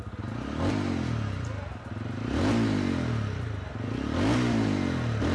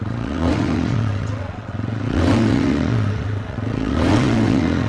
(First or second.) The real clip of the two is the first